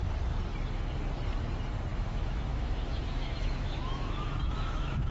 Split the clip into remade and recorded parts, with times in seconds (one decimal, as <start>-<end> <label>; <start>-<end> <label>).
0.0-1.9 recorded; 1.9-5.1 remade